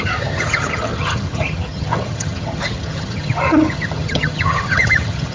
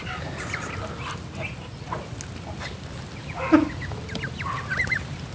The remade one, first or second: first